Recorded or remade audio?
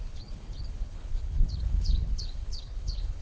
remade